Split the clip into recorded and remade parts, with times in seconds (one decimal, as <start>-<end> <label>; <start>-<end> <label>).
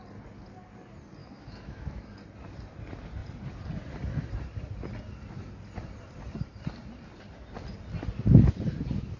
0.0-1.2 recorded; 1.2-2.1 remade; 2.1-9.2 recorded